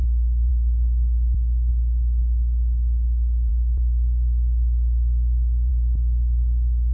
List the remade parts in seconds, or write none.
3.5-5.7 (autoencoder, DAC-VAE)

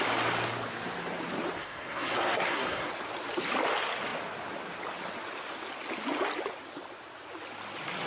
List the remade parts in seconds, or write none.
1.6-2.9 (codec, SNAC)

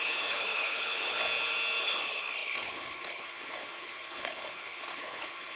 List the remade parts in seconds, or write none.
0.0-1.2 (codec, HILCodec); 1.8-5.6

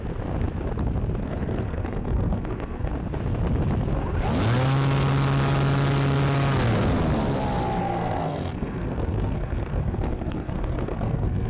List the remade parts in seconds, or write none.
1.2-2.9 (codec, SNAC); 7.8-11.5

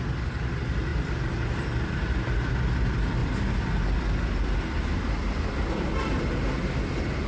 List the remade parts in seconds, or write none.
0.0-7.3 (vocoder, BigVGAN v2)

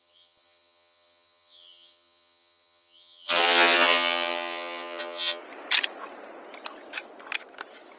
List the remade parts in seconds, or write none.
0.0-5.4 (vocoder, HiFi-GAN)

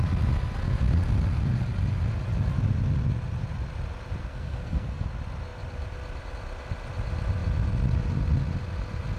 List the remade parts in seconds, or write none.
4.2-5.1 (codec, SNAC)